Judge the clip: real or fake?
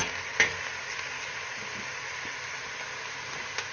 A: real